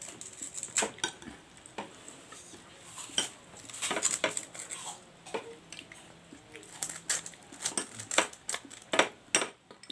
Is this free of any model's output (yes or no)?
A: yes